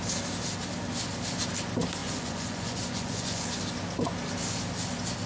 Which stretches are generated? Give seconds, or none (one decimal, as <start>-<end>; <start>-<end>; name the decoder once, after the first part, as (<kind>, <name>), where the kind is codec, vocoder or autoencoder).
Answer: 2.0-3.4 (vocoder, Vocos)